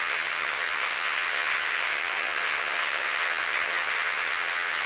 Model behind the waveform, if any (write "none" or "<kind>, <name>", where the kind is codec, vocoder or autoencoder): vocoder, HiFi-GAN